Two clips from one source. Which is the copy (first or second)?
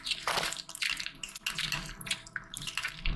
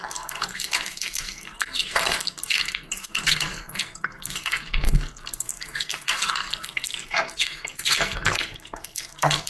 second